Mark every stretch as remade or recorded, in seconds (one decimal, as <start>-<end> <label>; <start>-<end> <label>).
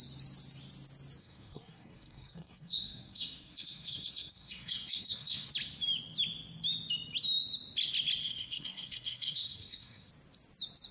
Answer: 0.0-1.2 recorded; 1.2-5.5 remade; 5.5-8.2 recorded; 8.2-10.1 remade; 10.1-10.9 recorded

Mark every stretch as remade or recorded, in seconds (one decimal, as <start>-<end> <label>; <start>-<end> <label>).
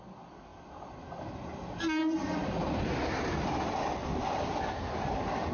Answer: 0.0-5.5 recorded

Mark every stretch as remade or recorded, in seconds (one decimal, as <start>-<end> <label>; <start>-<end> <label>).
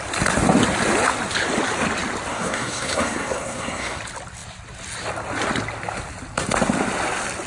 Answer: 0.0-2.3 recorded; 2.3-4.0 remade; 4.0-7.5 recorded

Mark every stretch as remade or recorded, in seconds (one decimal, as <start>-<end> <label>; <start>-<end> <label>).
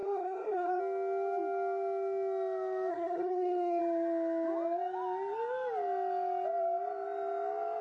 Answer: 0.0-0.8 remade; 0.8-2.9 recorded; 2.9-3.8 remade; 3.8-7.8 recorded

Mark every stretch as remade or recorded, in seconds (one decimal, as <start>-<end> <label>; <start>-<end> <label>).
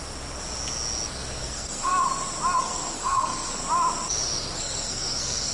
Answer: 0.0-1.1 recorded; 1.1-1.9 remade; 1.9-2.6 recorded; 2.6-3.6 remade; 3.6-4.6 recorded; 4.6-5.5 remade